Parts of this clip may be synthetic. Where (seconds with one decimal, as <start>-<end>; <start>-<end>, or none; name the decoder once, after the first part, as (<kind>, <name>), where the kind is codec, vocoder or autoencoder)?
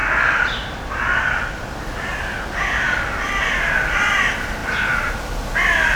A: 0.0-1.8 (vocoder, BigVGAN v2); 4.6-5.2